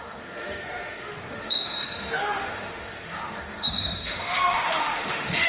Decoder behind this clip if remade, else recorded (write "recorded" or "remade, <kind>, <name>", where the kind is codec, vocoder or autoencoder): remade, autoencoder, DAC-VAE